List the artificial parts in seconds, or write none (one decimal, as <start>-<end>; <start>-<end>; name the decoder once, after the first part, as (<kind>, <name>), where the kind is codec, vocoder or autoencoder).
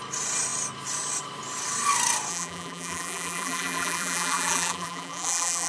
2.3-5.7 (vocoder, BigVGAN v2)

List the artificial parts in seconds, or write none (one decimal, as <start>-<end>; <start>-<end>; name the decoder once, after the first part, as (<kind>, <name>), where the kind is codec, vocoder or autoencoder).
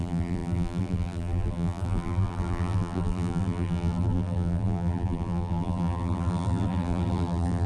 0.0-7.7 (vocoder, BigVGAN v2)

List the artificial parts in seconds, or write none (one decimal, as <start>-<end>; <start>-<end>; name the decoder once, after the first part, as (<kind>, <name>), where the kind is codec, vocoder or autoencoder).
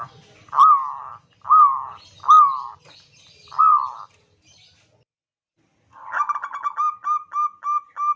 none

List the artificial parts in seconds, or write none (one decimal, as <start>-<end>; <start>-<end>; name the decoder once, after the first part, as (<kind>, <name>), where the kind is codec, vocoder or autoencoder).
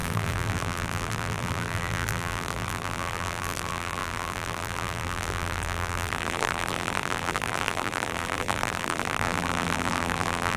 0.0-10.6 (vocoder, BigVGAN v2)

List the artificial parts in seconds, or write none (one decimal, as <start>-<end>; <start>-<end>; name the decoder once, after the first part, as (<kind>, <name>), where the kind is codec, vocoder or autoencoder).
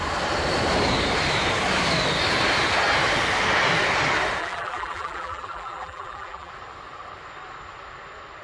4.4-6.5 (vocoder, BigVGAN v2)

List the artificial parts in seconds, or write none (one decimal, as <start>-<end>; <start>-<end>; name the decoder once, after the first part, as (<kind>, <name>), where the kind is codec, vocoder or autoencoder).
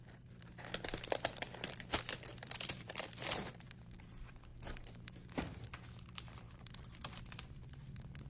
0.0-8.3 (vocoder, BigVGAN v2)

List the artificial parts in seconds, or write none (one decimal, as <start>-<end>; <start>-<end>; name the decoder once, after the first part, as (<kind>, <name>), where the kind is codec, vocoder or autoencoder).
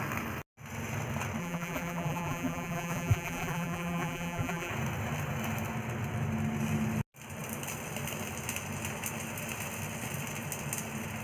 1.4-4.7 (vocoder, BigVGAN v2)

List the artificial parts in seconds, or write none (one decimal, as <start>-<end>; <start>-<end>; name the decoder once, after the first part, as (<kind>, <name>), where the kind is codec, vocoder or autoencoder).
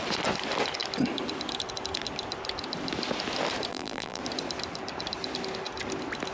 3.7-4.2 (vocoder, BigVGAN v2)